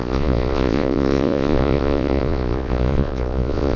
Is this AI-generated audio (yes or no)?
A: yes